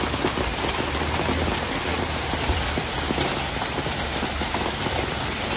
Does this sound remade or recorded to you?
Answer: recorded